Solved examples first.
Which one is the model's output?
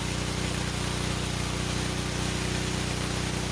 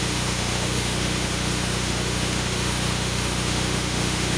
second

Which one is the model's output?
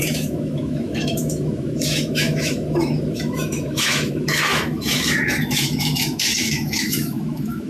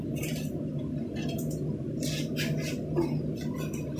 first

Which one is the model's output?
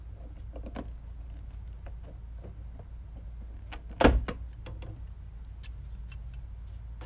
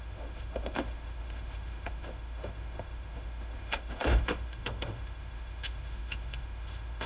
second